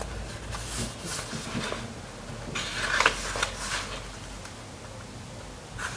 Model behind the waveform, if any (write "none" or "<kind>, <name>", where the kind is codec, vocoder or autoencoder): none